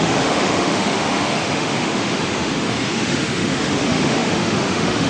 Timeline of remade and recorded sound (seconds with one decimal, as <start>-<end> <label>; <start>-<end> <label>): 0.0-5.1 remade